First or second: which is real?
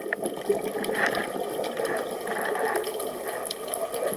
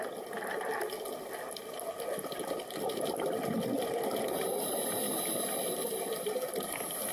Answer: first